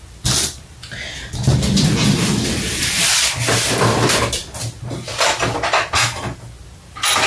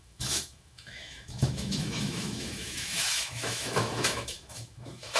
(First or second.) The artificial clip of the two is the second